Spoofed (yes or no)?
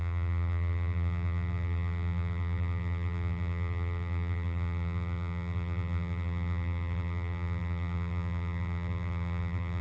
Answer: yes